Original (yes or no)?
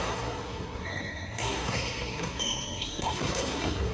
no